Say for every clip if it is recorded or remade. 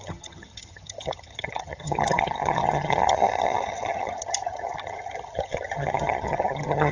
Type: remade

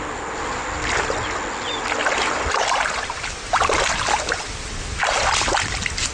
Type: recorded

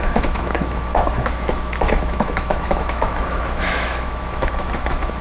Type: remade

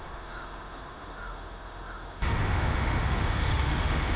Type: remade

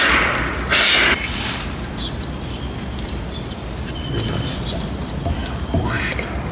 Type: recorded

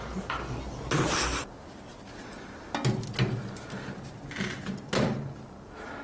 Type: recorded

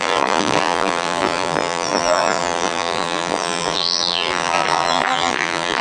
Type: remade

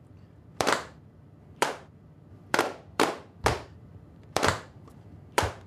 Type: remade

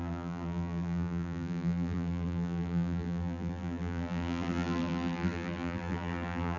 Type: remade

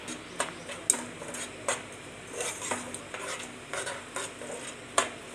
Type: recorded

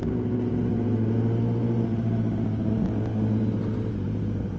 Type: recorded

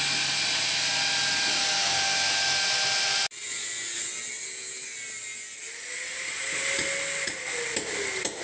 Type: recorded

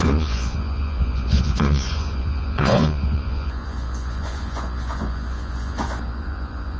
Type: remade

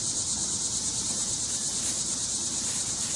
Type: remade